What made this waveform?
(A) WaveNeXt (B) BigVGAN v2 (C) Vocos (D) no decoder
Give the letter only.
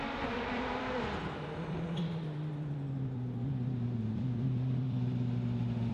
B